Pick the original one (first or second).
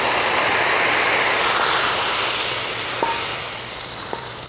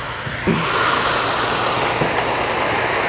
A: second